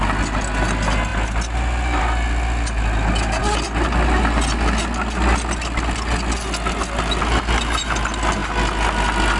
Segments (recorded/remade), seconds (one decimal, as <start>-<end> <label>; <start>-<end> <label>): 0.0-9.4 recorded